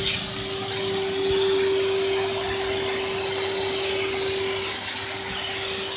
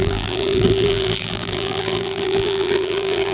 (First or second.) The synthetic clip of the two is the second